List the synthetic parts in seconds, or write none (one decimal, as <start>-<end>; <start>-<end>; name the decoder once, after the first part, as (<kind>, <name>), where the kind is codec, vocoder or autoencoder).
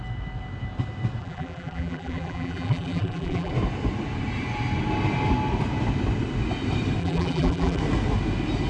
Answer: 1.2-3.5 (vocoder, BigVGAN v2); 7.0-7.8